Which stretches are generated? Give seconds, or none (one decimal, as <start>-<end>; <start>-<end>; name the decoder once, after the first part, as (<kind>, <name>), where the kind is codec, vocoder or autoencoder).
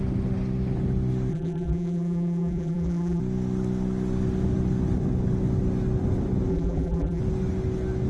1.3-3.2 (vocoder, BigVGAN v2); 6.5-7.2